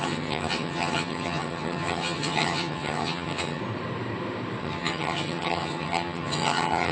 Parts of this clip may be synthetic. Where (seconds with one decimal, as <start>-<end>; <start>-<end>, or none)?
0.0-3.6; 4.6-6.9

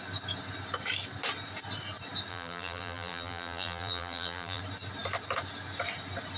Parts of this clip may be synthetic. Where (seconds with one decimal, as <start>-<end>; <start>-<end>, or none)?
2.3-4.6

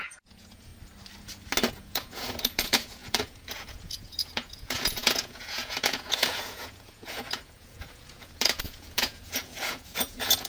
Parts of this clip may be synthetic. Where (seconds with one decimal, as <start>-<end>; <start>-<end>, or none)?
0.0-0.7; 1.7-10.5

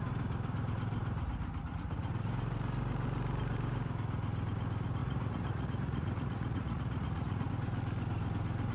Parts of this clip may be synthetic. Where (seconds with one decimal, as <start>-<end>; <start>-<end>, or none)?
5.0-7.5